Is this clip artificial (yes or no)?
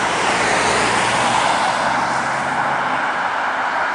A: no